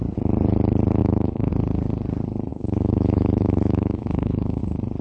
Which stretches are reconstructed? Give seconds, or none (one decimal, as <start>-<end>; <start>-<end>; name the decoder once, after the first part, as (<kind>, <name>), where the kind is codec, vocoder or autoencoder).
1.0-1.5 (autoencoder, DAC-VAE); 2.5-4.6